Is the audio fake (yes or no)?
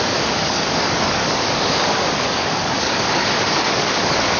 yes